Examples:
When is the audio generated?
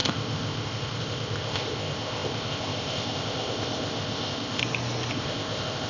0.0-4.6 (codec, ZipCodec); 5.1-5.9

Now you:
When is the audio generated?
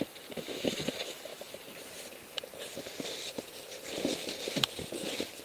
1.3-4.5 (vocoder, BigVGAN v2)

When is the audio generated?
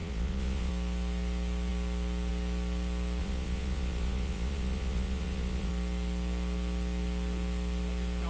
0.0-0.7 (vocoder, Vocos); 3.2-5.7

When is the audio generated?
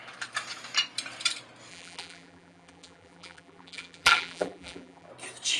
1.7-5.1 (vocoder, BigVGAN v2)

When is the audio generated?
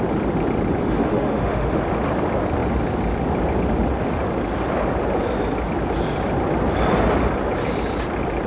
0.8-1.8 (autoencoder, DAC-VAE)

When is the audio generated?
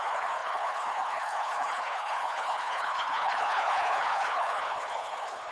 0.0-5.5 (codec, HILCodec)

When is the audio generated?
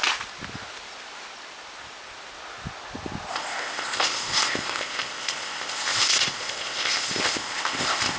3.3-8.2 (codec, ZipCodec)